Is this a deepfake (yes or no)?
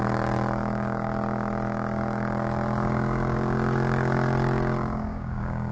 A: yes